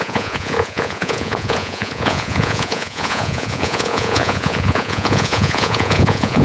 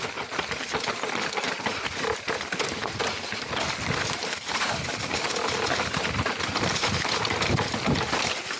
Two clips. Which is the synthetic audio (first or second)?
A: first